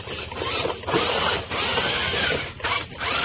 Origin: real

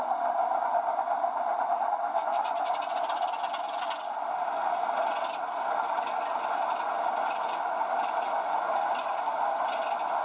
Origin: real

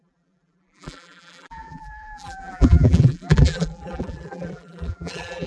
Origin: fake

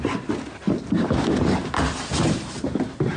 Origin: real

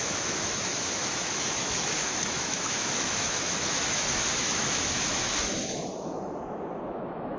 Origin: fake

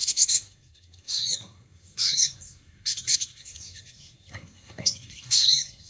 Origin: fake